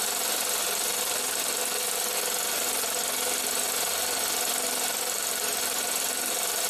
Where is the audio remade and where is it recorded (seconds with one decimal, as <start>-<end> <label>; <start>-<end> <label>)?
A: 0.0-6.7 recorded